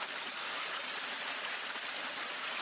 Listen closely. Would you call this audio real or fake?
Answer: real